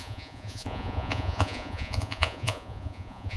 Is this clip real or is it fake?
fake